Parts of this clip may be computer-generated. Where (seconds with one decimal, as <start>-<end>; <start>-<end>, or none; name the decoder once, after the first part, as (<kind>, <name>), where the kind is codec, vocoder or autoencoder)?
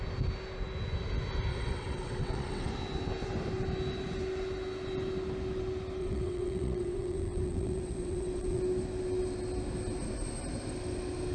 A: 1.5-2.7 (vocoder, WaveNeXt); 6.0-8.6